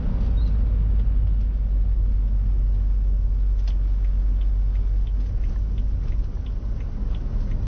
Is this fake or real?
real